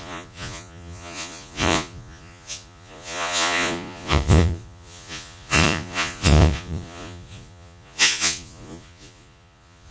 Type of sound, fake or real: fake